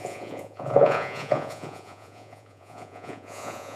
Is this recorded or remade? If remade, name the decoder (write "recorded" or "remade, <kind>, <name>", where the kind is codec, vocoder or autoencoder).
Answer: remade, vocoder, Vocos